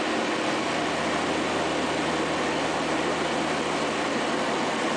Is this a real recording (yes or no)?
yes